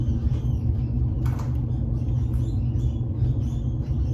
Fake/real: real